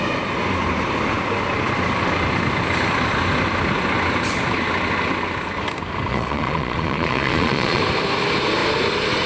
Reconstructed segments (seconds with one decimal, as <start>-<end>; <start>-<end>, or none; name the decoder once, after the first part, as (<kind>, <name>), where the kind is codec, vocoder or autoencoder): 6.1-7.8 (vocoder, Vocos)

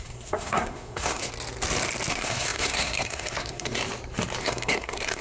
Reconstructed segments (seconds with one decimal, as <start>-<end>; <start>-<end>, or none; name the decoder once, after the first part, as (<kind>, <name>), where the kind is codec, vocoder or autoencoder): 0.0-1.3 (codec, SNAC); 2.1-3.8; 4.4-5.2